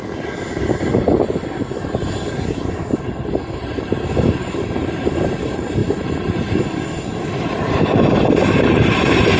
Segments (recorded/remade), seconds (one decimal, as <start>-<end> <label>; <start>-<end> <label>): 0.0-3.0 recorded; 3.0-9.4 remade